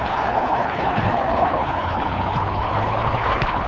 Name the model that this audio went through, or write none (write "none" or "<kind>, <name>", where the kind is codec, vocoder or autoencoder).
codec, HILCodec